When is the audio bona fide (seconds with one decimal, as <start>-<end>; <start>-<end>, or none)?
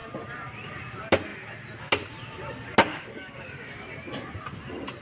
0.0-2.9; 3.8-5.0